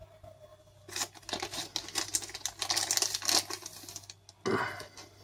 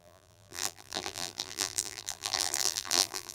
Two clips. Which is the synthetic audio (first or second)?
second